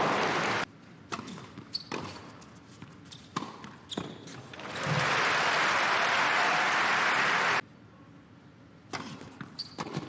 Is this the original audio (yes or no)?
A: yes